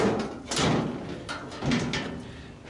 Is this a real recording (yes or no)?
yes